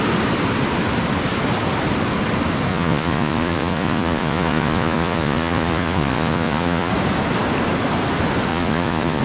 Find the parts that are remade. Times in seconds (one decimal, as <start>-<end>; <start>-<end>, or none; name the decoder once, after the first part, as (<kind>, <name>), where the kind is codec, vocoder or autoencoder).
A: 2.7-6.9 (vocoder, Vocos); 8.5-9.2